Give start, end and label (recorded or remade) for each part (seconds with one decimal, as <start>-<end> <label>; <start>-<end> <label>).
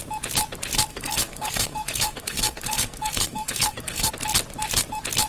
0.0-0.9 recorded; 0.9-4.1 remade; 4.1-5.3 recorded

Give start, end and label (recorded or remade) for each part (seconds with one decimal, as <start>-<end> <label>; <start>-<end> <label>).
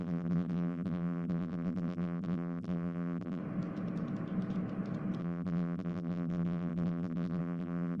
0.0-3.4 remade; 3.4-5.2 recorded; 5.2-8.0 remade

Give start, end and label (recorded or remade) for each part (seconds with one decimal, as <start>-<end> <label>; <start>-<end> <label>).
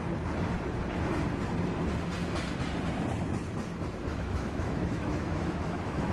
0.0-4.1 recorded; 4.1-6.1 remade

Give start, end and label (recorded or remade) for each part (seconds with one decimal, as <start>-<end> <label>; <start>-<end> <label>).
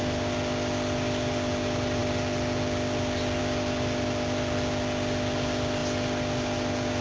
0.0-7.0 recorded